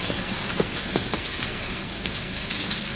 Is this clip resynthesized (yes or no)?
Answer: yes